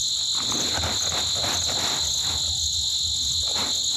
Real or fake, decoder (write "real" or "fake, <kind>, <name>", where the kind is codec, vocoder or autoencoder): real